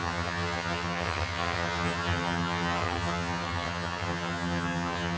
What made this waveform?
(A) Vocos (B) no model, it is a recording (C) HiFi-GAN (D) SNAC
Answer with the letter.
C